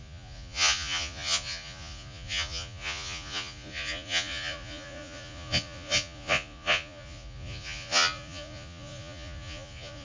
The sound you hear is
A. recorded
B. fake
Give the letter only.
B